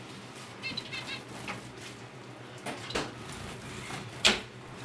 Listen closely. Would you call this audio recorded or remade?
remade